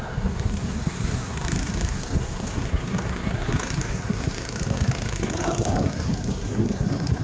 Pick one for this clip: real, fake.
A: fake